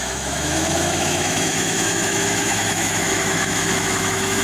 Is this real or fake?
fake